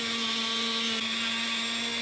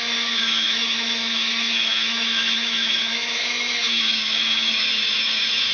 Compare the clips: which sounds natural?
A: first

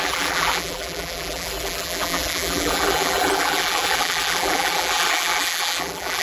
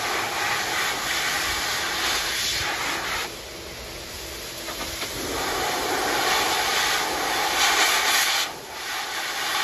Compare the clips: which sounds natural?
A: second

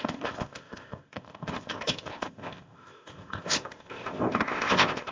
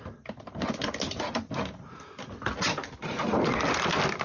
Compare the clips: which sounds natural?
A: second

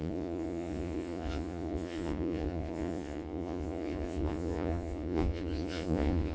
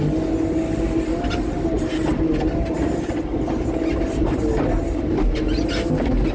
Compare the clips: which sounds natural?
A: second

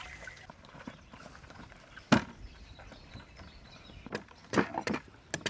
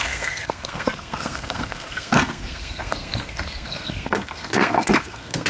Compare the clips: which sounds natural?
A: first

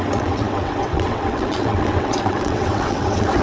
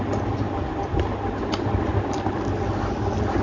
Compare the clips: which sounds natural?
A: second